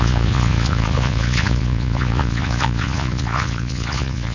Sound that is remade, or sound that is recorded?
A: remade